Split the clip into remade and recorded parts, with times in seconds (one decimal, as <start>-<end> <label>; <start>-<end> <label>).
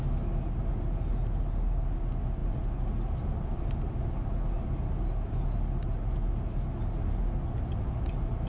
0.0-8.5 recorded